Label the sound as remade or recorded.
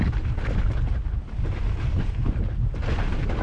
recorded